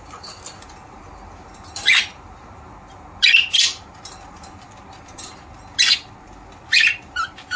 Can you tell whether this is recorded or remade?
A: recorded